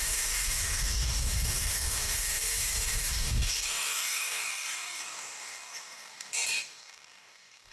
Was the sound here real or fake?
fake